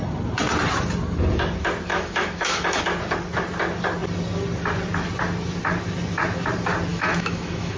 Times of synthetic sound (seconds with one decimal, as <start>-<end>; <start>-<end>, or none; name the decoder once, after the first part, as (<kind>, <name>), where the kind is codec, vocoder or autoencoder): 1.9-2.8 (autoencoder, DAC-VAE); 6.9-7.8